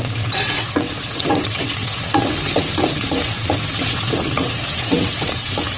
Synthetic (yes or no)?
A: yes